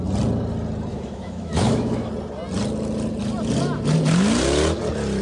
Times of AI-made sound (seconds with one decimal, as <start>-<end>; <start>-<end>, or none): 0.9-2.1